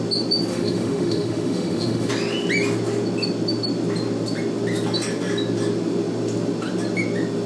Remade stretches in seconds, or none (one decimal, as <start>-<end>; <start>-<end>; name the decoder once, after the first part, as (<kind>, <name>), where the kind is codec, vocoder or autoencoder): 0.5-2.1 (autoencoder, DAC-VAE)